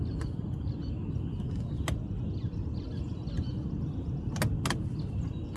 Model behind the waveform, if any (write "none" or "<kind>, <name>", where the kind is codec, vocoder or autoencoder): none